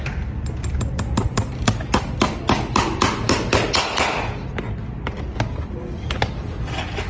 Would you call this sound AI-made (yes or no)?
no